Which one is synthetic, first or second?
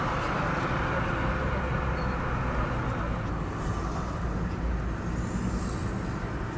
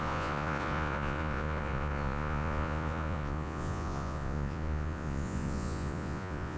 second